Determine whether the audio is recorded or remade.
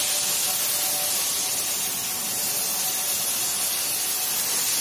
recorded